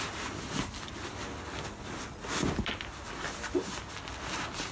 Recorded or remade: recorded